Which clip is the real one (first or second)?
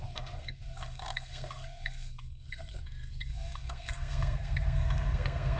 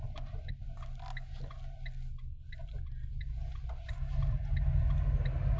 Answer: second